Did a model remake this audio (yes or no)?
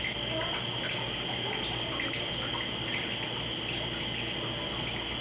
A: no